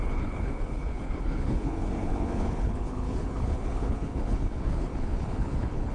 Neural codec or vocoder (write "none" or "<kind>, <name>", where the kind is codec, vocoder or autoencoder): codec, HILCodec